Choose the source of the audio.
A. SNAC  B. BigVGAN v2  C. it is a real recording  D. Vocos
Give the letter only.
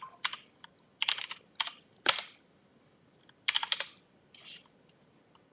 C